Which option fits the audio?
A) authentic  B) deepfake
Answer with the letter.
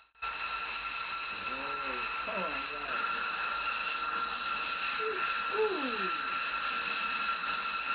A